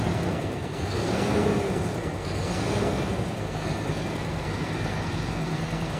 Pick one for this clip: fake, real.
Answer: fake